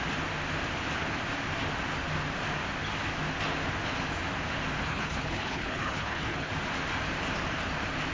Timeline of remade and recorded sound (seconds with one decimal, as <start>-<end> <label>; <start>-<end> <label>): 0.0-4.8 recorded; 4.8-6.5 remade; 6.5-8.1 recorded

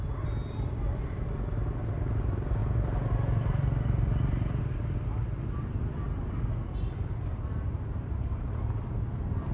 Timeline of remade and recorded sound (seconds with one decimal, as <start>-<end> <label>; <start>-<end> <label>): 0.0-9.5 recorded

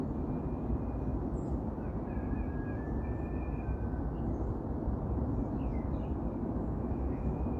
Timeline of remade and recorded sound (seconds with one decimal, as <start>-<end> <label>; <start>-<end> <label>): 0.0-6.4 recorded; 6.4-7.6 remade